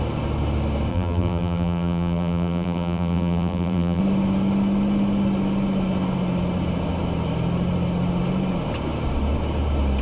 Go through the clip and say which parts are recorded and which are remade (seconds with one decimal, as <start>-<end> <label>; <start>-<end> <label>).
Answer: 0.0-0.9 recorded; 0.9-4.0 remade; 4.0-10.0 recorded